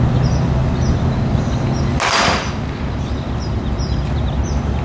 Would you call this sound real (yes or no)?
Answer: yes